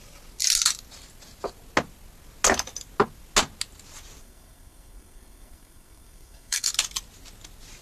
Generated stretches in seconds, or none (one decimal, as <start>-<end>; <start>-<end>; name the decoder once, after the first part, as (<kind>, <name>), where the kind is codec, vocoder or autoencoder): 4.2-6.7 (codec, SNAC)